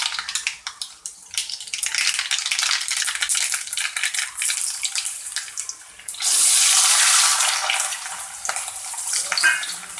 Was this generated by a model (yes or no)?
no